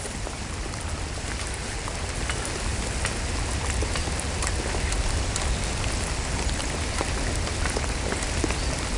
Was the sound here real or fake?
real